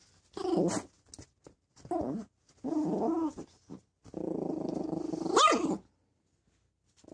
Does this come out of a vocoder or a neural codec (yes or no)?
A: no